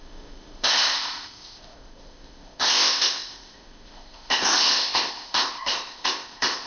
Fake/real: fake